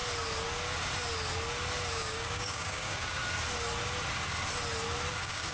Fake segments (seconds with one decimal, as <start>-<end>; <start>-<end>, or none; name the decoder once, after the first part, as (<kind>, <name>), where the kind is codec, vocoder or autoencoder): 1.9-3.2 (codec, DAC); 5.1-5.5